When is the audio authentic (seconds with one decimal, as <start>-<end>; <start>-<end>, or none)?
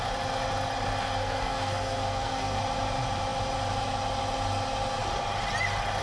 0.0-1.2; 2.6-6.0